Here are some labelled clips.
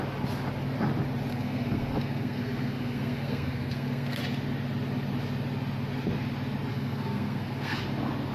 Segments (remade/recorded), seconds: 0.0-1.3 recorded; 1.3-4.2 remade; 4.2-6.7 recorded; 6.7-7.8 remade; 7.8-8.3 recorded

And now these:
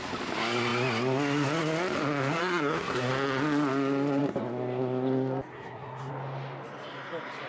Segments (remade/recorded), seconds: 0.0-2.4 recorded; 2.4-3.1 remade; 3.1-5.5 recorded; 5.5-6.1 remade; 6.1-7.5 recorded

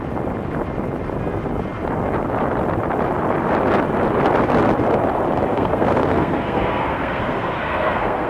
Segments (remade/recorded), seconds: 0.0-5.5 recorded; 5.5-8.3 remade

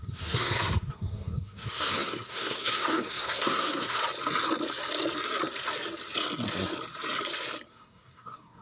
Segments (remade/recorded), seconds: 0.0-4.0 remade; 4.0-7.7 recorded; 7.7-8.6 remade

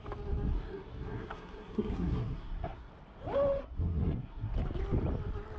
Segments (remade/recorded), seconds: 0.0-0.5 recorded; 0.5-2.9 remade; 2.9-3.6 recorded; 3.6-4.5 remade; 4.5-5.6 recorded

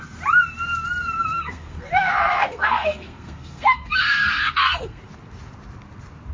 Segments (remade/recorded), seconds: 0.0-1.2 recorded; 1.2-5.0 remade; 5.0-6.3 recorded

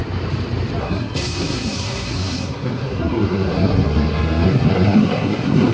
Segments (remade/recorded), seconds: 0.0-0.8 recorded; 0.8-5.7 remade